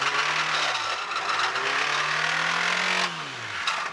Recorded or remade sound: recorded